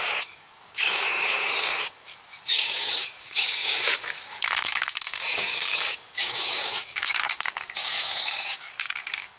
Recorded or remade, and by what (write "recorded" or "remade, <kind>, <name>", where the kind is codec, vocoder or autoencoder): remade, codec, DAC